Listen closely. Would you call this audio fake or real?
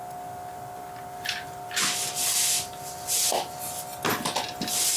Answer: real